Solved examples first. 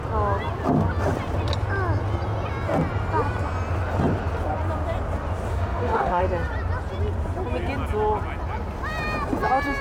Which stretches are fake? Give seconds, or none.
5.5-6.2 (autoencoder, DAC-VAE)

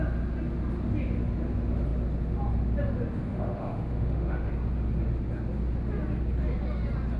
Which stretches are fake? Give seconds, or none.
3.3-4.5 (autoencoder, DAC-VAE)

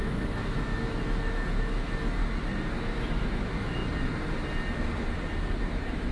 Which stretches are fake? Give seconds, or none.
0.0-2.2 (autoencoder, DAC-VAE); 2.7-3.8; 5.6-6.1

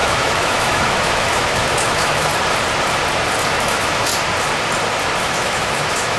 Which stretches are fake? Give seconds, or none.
0.0-2.3 (autoencoder, DAC-VAE); 3.5-4.1; 5.2-6.2

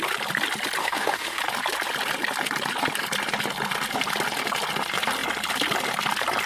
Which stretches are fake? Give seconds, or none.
0.8-1.4 (autoencoder, DAC-VAE)

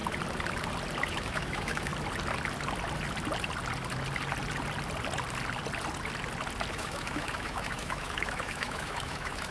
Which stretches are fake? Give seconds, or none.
1.1-1.9 (autoencoder, DAC-VAE); 6.7-9.5

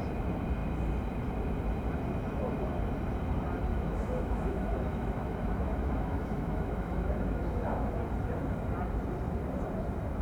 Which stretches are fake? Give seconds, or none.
3.7-8.0 (autoencoder, DAC-VAE)

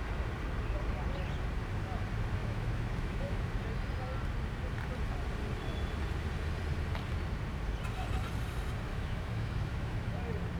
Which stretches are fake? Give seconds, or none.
2.4-3.5 (autoencoder, DAC-VAE); 8.9-10.2